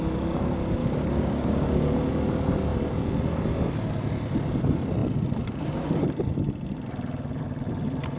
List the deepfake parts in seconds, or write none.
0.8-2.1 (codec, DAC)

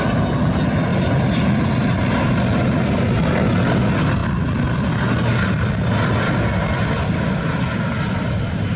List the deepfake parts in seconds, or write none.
none

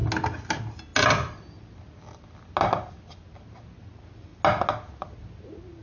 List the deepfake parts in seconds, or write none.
none

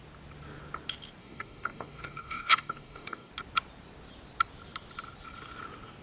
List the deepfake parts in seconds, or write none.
1.2-3.3 (codec, DAC)

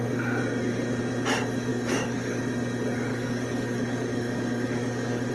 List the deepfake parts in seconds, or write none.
1.7-2.4 (codec, DAC); 3.1-5.3

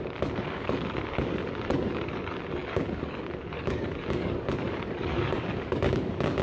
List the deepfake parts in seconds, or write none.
0.0-6.4 (codec, DAC)